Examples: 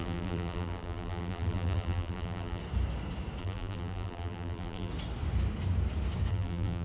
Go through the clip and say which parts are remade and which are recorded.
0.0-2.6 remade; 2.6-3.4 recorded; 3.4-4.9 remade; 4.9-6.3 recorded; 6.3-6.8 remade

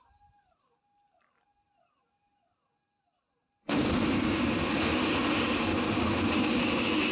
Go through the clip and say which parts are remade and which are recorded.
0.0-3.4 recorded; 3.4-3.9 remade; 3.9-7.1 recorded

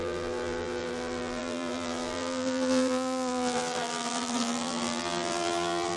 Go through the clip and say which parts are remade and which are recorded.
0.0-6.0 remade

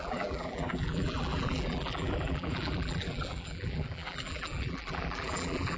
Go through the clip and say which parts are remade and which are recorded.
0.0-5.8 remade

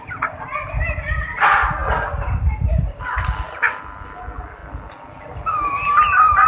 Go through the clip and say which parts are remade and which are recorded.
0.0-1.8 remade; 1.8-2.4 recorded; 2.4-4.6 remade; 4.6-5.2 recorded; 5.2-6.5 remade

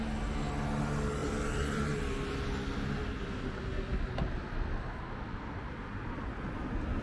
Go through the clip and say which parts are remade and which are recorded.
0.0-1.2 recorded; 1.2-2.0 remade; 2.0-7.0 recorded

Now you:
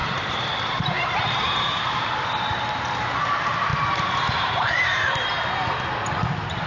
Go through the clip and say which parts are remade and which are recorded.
0.0-1.8 remade; 1.8-3.7 recorded; 3.7-5.5 remade; 5.5-6.7 recorded

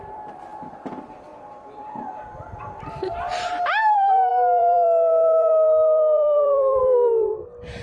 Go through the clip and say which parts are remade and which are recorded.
0.0-3.3 remade; 3.3-3.9 recorded; 3.9-7.8 remade